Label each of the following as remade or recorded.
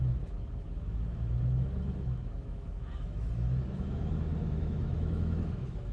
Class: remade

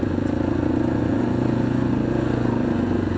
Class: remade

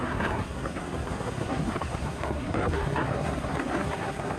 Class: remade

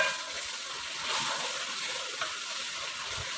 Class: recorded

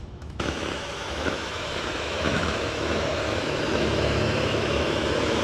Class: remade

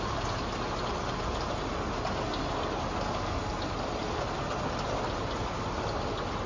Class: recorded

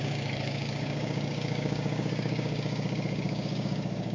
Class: remade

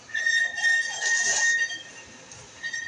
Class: recorded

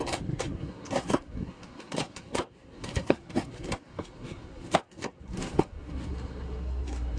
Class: remade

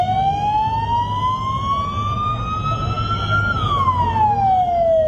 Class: recorded